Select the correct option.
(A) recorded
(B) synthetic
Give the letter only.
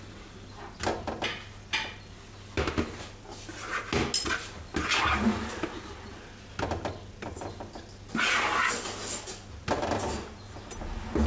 A